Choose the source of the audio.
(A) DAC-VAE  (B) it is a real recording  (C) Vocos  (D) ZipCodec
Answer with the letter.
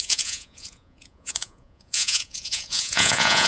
C